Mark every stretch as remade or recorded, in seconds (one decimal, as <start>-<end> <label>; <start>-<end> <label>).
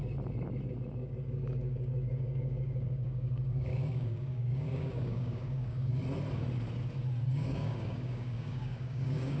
0.0-1.0 recorded; 1.0-6.0 remade; 6.0-7.3 recorded; 7.3-9.4 remade